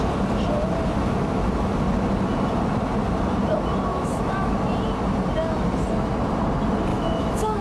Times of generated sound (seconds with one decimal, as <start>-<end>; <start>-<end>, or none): 3.9-4.5; 6.9-7.6